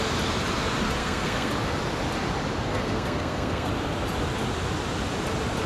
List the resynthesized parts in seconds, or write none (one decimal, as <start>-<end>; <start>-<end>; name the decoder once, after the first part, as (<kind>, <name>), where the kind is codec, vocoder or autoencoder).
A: 1.0-1.5 (codec, SNAC); 2.7-3.7